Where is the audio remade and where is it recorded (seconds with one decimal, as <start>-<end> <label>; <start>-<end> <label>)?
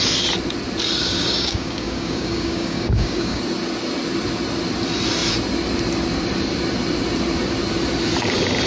0.0-1.0 recorded; 1.0-3.4 remade; 3.4-8.7 recorded